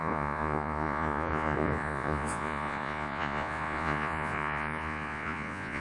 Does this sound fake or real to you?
fake